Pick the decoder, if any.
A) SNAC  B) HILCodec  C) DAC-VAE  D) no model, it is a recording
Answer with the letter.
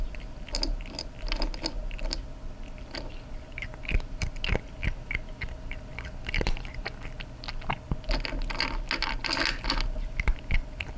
D